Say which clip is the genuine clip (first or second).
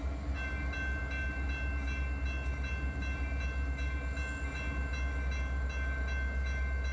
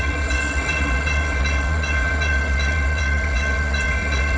first